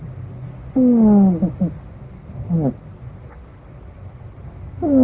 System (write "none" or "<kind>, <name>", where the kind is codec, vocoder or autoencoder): none